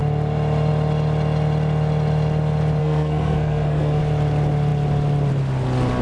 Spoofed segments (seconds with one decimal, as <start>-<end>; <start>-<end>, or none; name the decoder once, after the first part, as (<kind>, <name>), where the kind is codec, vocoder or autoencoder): 2.8-4.0 (codec, SNAC)